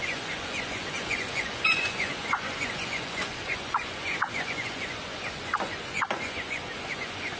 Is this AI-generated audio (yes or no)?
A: yes